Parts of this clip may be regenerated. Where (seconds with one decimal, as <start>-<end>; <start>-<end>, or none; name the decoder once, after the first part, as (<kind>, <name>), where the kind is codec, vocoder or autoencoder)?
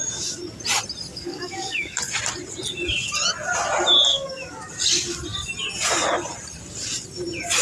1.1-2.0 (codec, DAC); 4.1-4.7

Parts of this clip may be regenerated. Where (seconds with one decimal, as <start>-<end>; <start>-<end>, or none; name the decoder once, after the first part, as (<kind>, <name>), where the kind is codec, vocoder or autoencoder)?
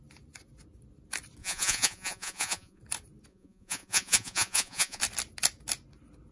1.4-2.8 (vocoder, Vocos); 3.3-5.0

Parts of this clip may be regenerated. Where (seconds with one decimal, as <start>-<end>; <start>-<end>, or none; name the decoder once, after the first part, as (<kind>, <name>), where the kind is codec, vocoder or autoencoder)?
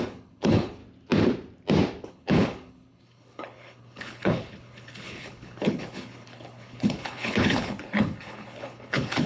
0.0-0.8 (codec, HILCodec); 2.1-9.3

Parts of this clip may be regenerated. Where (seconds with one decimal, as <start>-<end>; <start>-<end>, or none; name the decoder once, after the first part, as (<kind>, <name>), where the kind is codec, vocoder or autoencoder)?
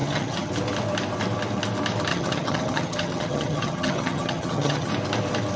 0.0-0.5 (vocoder, HiFi-GAN); 2.1-4.9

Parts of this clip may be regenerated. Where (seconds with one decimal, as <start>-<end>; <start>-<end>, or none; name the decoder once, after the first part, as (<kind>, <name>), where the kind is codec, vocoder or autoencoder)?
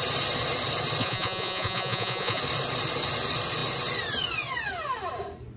1.0-2.4 (vocoder, Vocos)